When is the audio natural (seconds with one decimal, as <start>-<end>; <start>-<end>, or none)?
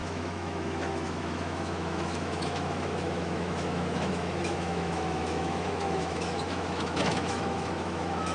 none